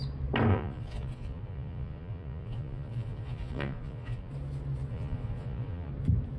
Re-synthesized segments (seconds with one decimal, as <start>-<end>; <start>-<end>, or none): 0.5-4.3; 4.9-5.9